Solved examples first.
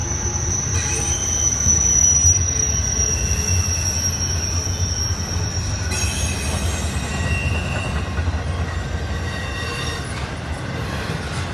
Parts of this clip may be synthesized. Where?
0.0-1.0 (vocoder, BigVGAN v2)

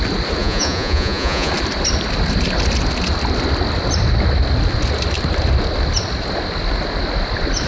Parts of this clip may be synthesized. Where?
0.4-1.5 (vocoder, Vocos)

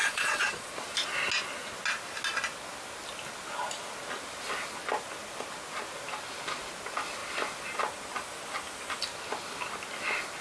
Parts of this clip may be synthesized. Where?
0.0-0.7 (vocoder, Vocos)

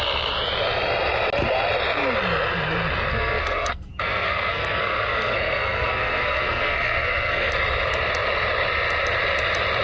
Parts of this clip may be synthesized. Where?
3.1-7.5 (codec, SNAC)

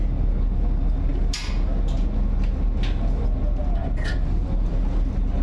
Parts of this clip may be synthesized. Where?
3.8-4.7 (vocoder, BigVGAN v2)

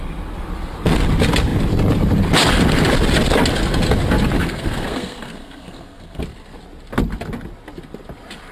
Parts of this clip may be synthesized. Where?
4.4-6.2 (codec, SNAC)